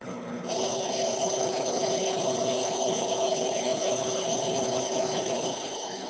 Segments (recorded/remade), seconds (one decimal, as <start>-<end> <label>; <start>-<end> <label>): 0.0-6.1 remade